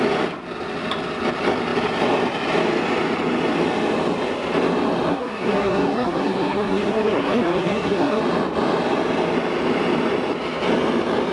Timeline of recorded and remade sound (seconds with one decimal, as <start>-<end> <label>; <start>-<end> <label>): 0.0-5.1 recorded; 5.1-8.2 remade; 8.2-11.3 recorded

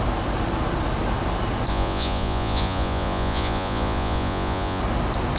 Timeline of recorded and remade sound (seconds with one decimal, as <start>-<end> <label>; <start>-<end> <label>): 0.0-1.7 recorded; 1.7-4.8 remade; 4.8-5.4 recorded

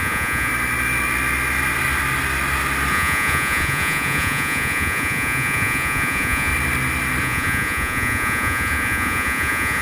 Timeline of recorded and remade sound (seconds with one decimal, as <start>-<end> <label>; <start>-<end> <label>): 0.0-0.5 remade; 0.5-2.9 recorded; 2.9-6.5 remade; 6.5-7.2 recorded; 7.2-9.8 remade

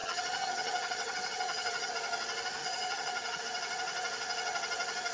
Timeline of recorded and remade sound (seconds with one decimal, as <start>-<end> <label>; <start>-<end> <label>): 0.0-1.9 remade; 1.9-2.6 recorded; 2.6-3.4 remade; 3.4-5.1 recorded

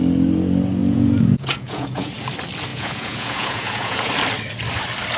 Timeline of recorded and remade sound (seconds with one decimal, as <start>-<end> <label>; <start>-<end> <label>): 0.0-0.8 recorded; 0.8-2.1 remade; 2.1-2.7 recorded; 2.7-4.1 remade; 4.1-5.2 recorded

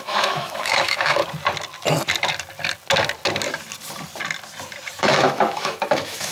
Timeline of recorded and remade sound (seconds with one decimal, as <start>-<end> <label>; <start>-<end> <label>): 0.0-1.2 remade; 1.2-5.0 recorded; 5.0-6.3 remade

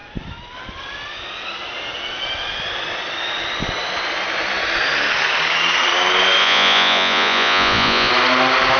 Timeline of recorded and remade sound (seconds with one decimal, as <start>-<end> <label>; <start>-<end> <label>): 0.0-6.4 recorded; 6.4-8.1 remade; 8.1-8.8 recorded